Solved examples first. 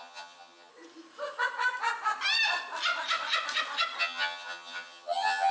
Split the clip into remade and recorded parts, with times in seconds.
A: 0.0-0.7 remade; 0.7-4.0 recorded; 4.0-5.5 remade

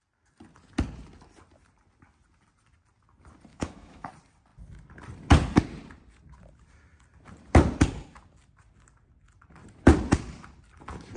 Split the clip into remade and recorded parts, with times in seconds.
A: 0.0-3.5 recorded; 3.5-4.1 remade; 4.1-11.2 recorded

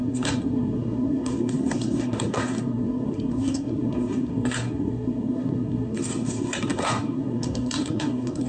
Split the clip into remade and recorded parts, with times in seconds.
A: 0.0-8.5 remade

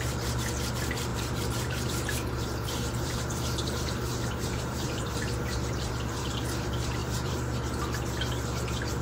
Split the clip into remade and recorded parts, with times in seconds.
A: 0.0-1.1 recorded; 1.1-5.8 remade; 5.8-7.0 recorded; 7.0-7.8 remade; 7.8-9.0 recorded